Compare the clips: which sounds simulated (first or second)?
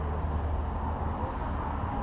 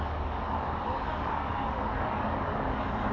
second